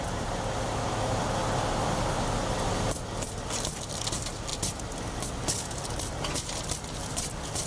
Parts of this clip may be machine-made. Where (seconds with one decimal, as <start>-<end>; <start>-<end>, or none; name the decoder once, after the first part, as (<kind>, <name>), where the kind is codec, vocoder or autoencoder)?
none